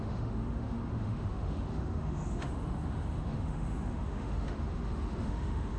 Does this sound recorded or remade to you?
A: remade